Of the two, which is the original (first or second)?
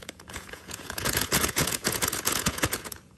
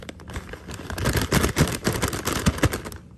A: second